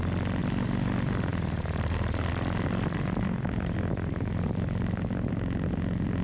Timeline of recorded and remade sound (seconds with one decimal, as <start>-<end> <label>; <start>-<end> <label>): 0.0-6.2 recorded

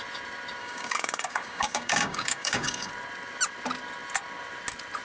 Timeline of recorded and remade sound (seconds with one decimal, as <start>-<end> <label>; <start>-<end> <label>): 0.0-0.6 recorded; 0.6-2.9 remade; 2.9-5.0 recorded

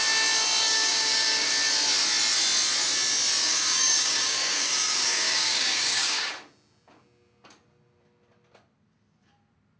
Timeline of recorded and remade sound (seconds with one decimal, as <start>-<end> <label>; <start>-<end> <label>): 0.0-0.6 recorded; 0.6-1.5 remade; 1.5-3.4 recorded; 3.4-6.3 remade; 6.3-9.8 recorded

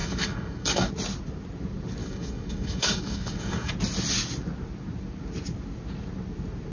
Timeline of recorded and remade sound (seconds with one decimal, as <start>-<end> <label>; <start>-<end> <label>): 0.0-0.9 remade; 0.9-2.0 recorded; 2.0-3.7 remade; 3.7-6.7 recorded

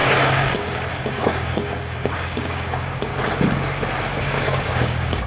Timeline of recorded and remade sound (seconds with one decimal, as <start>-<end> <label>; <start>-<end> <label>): 0.0-3.1 remade; 3.1-4.2 recorded; 4.2-5.3 remade